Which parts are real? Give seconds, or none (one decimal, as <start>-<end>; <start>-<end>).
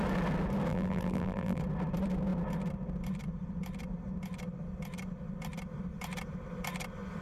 0.0-0.7; 1.6-7.2